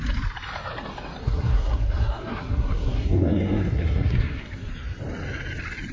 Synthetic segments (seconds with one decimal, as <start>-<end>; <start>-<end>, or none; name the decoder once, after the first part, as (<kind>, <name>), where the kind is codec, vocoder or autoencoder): 1.2-4.7 (codec, SNAC)